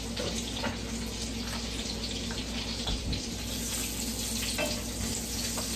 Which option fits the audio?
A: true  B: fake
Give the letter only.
A